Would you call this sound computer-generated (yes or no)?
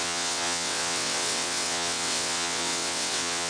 yes